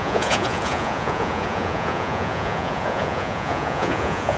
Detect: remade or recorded remade